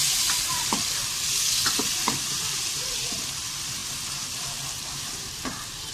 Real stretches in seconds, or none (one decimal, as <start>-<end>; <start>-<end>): 0.0-5.9